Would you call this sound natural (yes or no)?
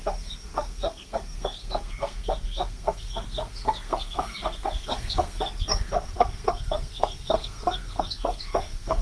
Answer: no